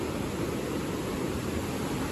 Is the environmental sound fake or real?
real